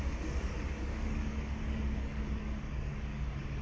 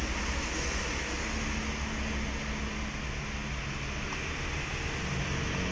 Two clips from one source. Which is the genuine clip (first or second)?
second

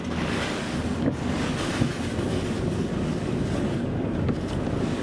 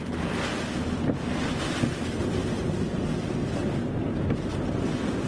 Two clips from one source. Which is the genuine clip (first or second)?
second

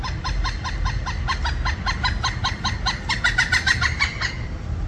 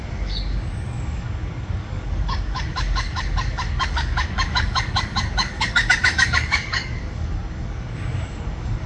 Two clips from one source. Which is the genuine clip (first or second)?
first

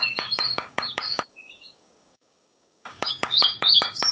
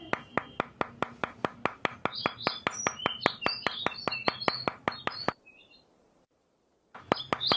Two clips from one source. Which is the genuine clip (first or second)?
second